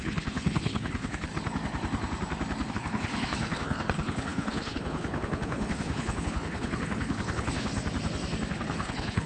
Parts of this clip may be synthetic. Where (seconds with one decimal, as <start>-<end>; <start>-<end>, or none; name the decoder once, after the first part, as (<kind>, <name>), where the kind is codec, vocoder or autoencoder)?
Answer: 0.0-1.3 (codec, HILCodec); 2.7-7.7; 8.5-9.3